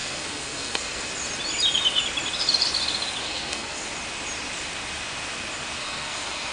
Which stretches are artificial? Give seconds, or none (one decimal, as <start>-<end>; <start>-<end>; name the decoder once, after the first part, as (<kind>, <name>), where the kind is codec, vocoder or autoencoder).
0.0-1.1 (codec, SNAC); 3.2-3.9; 5.8-6.5